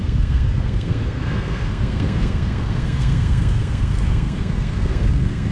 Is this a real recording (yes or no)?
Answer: no